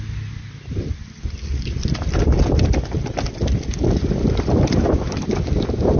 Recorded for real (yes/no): yes